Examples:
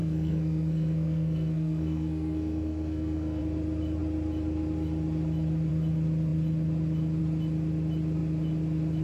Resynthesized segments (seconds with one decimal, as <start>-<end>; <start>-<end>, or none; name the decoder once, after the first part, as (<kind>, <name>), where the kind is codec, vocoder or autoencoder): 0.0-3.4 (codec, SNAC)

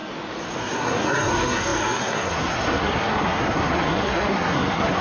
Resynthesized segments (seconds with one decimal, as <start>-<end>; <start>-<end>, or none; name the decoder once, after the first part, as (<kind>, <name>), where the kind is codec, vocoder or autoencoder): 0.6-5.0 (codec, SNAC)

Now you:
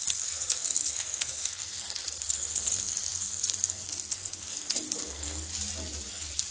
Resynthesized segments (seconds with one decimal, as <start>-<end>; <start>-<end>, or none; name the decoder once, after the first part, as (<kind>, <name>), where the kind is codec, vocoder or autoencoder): 0.0-5.5 (codec, SNAC); 6.1-6.5

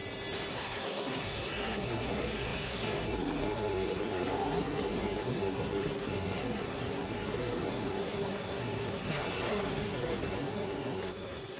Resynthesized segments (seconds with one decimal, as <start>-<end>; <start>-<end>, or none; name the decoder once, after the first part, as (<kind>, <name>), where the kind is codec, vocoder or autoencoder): 0.5-11.6 (codec, SNAC)